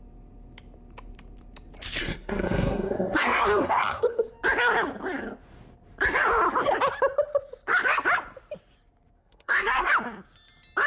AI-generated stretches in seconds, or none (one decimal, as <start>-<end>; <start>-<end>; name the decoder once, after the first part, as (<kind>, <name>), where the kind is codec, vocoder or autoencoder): 2.0-4.3 (codec, SNAC); 9.2-9.9